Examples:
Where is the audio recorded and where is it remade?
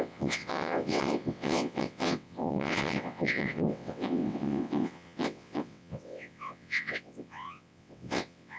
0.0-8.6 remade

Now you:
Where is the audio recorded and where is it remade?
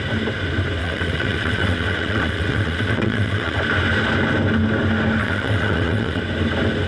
0.0-0.8 recorded; 0.8-3.6 remade; 3.6-5.2 recorded; 5.2-6.2 remade; 6.2-6.9 recorded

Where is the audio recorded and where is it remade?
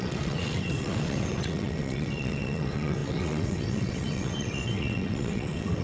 0.0-5.8 remade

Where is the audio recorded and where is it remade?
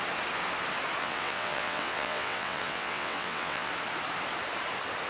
0.0-1.0 recorded; 1.0-3.7 remade; 3.7-5.1 recorded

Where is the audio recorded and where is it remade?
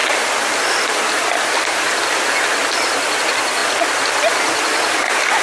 0.0-5.4 recorded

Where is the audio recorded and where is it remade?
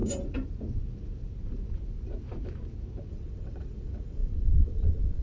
0.0-3.1 recorded; 3.1-5.2 remade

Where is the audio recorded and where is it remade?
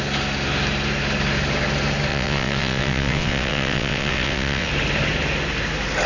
0.0-2.1 recorded; 2.1-4.7 remade; 4.7-6.1 recorded